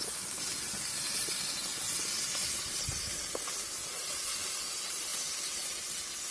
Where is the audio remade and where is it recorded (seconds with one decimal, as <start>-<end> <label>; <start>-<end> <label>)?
0.0-6.3 recorded